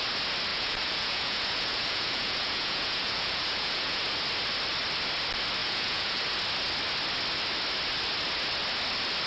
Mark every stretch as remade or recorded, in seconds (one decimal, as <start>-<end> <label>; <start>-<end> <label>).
0.0-0.5 recorded; 0.5-4.0 remade; 4.0-5.6 recorded; 5.6-6.2 remade; 6.2-9.3 recorded